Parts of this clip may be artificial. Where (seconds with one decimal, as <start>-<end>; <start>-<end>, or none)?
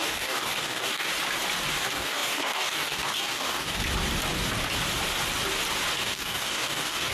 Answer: 0.0-1.1; 1.7-3.8; 6.0-7.1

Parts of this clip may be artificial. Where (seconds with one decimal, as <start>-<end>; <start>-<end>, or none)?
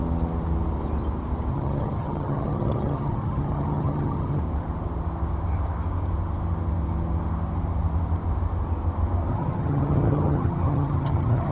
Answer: 1.5-4.4; 9.3-11.5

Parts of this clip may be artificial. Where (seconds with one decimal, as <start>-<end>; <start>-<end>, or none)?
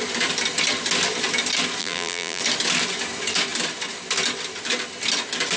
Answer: 1.8-2.4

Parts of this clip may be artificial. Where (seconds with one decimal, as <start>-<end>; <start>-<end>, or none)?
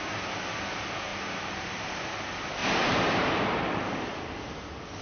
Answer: 1.1-1.9; 2.6-4.2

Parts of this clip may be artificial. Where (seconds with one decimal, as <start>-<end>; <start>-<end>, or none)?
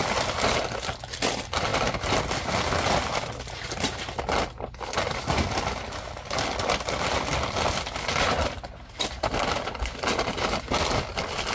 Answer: none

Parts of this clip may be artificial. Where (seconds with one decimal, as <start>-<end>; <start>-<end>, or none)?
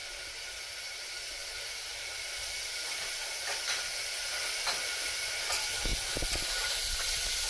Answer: 0.0-0.6; 1.4-5.5; 5.9-7.0